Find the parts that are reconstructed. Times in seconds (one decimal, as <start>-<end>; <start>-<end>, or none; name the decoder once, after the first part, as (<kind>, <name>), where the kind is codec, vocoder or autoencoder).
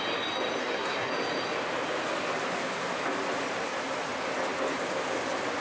0.6-1.1 (codec, SNAC)